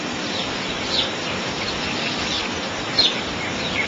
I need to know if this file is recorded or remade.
recorded